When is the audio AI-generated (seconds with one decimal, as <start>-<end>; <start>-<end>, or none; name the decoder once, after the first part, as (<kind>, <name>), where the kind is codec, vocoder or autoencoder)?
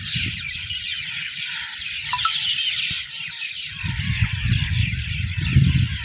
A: 2.1-6.0 (vocoder, BigVGAN v2)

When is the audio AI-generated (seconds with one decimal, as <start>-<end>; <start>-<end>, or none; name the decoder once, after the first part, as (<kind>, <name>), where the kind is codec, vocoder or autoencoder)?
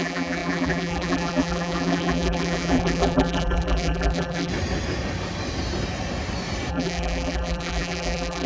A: 0.0-4.5 (vocoder, BigVGAN v2); 6.7-8.5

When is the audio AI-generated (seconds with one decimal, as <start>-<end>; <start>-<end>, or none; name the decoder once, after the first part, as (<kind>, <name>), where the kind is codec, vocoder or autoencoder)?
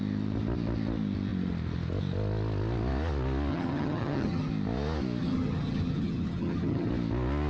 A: 3.5-4.5 (vocoder, HiFi-GAN); 5.2-6.9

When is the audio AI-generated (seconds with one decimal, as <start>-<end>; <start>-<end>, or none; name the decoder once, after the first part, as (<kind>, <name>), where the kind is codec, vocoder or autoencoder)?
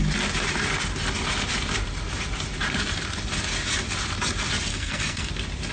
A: 4.7-5.3 (codec, SNAC)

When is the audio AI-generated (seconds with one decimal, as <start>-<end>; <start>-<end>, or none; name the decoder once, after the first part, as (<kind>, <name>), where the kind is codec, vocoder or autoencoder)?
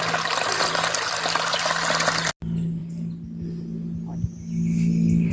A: none